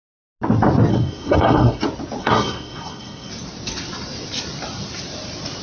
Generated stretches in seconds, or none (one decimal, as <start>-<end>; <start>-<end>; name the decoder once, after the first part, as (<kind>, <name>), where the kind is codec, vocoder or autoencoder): 0.9-1.8 (codec, SNAC); 2.2-3.3